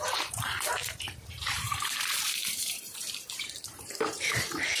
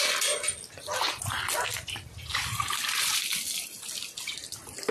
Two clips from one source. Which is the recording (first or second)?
second